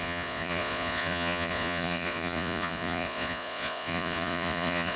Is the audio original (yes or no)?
no